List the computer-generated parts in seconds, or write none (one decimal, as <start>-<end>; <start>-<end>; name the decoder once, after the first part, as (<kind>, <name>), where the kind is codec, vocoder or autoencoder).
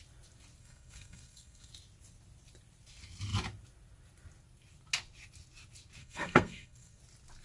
0.6-1.7 (codec, SNAC); 6.0-7.0